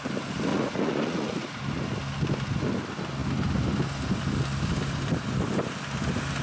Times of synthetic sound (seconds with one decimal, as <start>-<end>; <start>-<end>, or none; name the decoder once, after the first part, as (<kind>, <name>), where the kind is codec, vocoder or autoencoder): 0.5-1.6 (vocoder, Vocos)